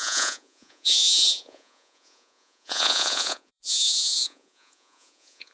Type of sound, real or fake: fake